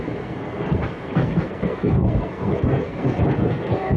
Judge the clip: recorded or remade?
remade